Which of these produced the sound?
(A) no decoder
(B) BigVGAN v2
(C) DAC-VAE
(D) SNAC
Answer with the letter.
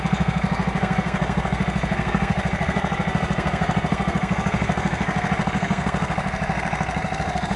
D